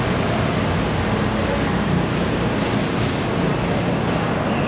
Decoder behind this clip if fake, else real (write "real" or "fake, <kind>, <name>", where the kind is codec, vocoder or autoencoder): real